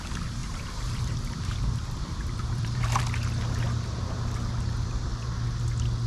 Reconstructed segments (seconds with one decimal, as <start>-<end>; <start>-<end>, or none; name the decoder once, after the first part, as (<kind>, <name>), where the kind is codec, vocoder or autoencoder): 0.4-3.0 (vocoder, BigVGAN v2)